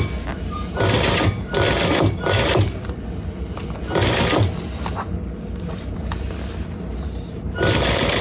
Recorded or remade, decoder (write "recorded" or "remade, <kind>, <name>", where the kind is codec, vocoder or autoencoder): remade, vocoder, BigVGAN v2